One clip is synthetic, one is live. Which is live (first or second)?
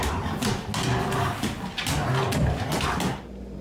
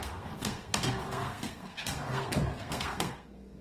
first